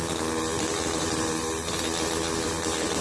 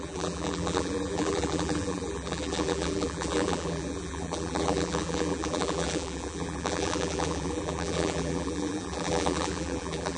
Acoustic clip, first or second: first